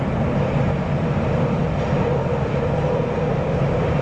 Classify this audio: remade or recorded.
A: recorded